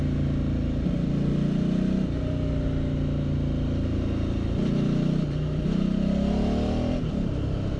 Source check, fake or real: real